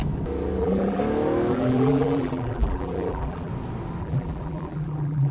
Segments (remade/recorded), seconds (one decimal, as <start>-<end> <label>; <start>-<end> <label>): 0.0-0.6 recorded; 0.6-1.0 remade; 1.0-1.5 recorded; 1.5-3.5 remade; 3.5-4.0 recorded; 4.0-5.3 remade